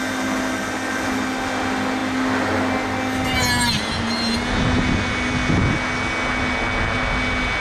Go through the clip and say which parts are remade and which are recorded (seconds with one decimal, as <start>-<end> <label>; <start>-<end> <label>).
0.0-7.6 recorded